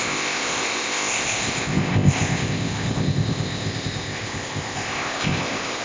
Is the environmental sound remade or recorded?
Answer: remade